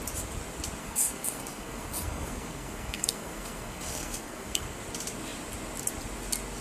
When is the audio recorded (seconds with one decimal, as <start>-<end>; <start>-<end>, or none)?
0.0-0.8; 4.8-6.6